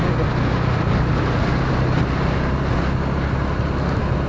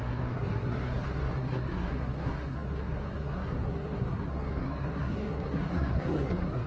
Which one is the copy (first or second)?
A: second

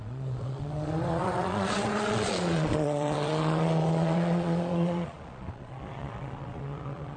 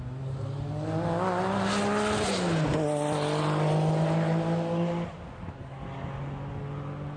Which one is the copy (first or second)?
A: first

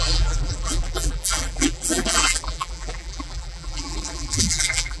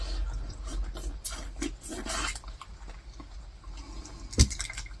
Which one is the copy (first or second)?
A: first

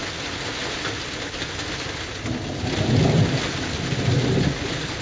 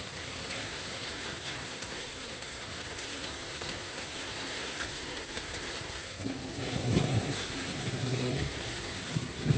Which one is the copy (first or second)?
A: second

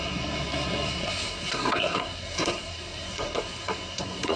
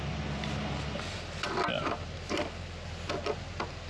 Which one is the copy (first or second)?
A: first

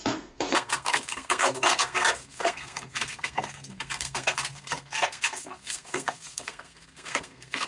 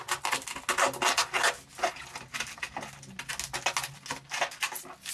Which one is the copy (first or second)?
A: first